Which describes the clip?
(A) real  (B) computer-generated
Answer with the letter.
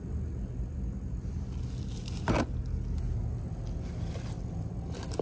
A